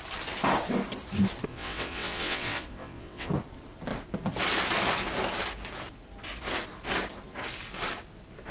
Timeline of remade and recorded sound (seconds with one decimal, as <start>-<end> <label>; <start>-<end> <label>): 0.0-1.5 recorded; 1.5-3.3 remade; 3.3-8.5 recorded